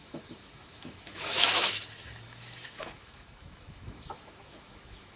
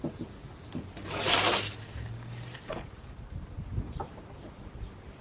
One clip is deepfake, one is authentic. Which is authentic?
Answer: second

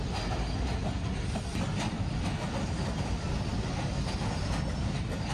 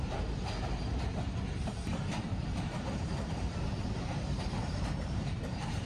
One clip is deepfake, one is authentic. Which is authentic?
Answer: first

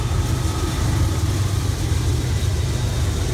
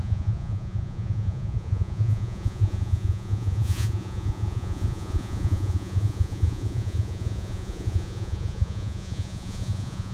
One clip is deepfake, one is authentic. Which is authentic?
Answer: first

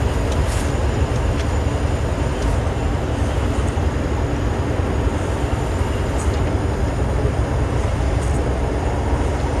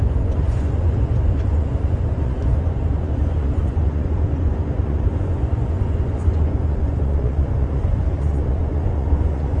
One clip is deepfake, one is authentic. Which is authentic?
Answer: first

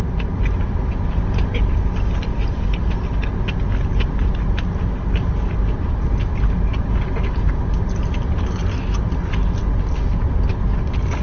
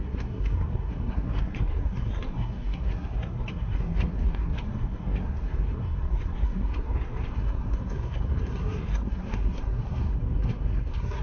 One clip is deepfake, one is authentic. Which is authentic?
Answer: first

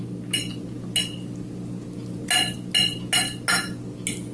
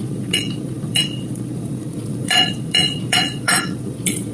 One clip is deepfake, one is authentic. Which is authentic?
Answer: first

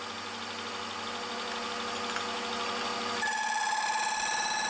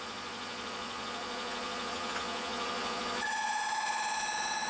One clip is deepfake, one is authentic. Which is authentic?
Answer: first